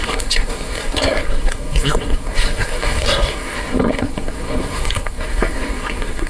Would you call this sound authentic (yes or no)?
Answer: no